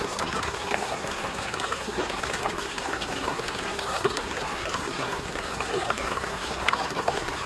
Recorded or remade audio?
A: remade